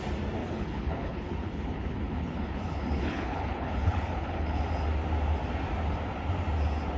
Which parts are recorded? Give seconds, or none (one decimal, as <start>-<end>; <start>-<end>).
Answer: 0.0-0.4; 4.6-7.0